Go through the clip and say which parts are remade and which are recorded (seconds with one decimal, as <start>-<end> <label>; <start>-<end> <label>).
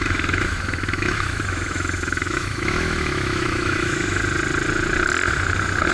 0.0-4.2 remade; 4.2-5.9 recorded